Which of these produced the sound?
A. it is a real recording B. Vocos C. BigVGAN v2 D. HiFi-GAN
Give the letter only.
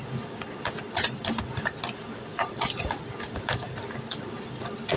A